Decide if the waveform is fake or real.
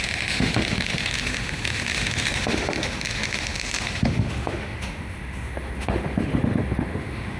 fake